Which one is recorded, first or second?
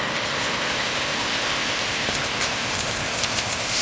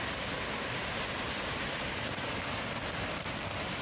second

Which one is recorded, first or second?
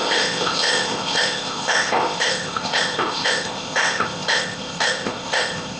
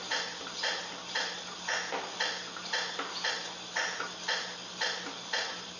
second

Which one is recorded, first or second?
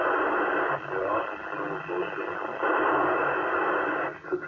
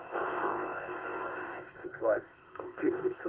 first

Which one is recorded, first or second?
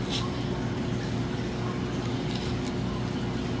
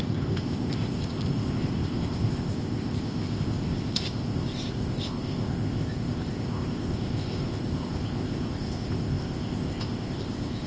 first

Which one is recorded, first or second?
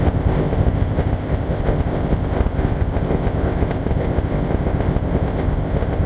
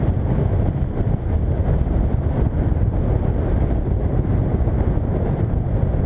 second